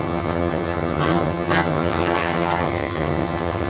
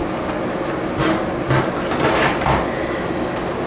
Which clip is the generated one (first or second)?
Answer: first